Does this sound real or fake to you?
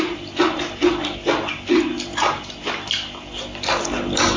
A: real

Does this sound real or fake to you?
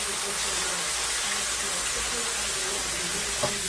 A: real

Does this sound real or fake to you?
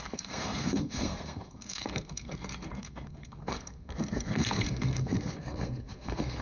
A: fake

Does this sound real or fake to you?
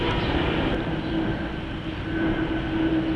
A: real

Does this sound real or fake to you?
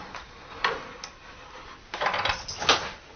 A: real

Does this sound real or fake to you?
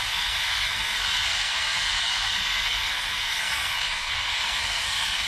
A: fake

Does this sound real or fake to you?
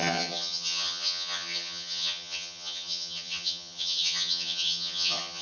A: fake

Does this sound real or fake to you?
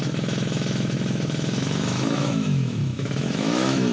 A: fake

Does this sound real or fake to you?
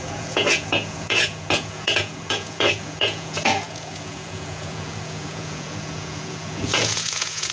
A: fake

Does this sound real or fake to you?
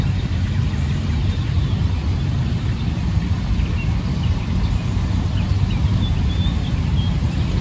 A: real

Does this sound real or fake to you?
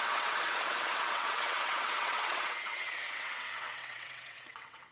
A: fake